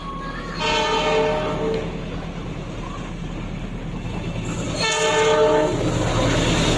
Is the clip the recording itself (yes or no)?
yes